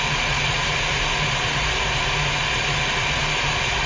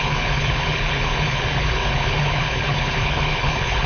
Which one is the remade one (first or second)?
second